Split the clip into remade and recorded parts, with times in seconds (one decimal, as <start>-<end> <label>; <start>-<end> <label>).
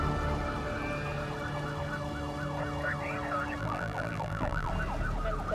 0.0-3.6 recorded; 3.6-4.7 remade; 4.7-5.5 recorded